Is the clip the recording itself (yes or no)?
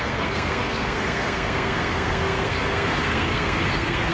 no